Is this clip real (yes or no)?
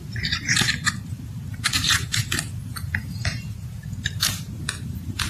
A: no